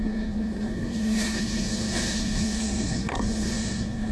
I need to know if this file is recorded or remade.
remade